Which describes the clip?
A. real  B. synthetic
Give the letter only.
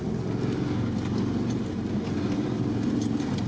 A